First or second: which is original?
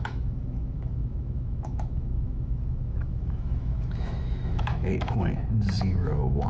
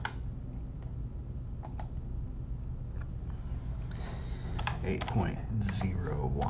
second